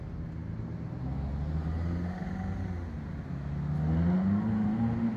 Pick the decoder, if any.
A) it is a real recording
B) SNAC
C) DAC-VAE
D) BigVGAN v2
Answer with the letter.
A